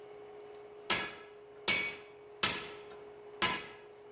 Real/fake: real